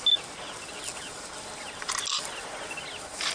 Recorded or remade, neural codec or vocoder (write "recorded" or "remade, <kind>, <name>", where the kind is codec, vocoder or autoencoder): recorded